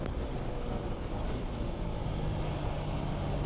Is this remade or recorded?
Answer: recorded